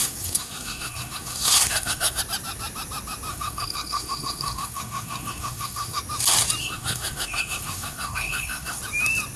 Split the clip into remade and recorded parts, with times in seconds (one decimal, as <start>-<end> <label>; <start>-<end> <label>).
0.0-2.2 remade; 2.2-3.3 recorded; 3.3-6.0 remade; 6.0-6.6 recorded; 6.6-8.8 remade; 8.8-9.4 recorded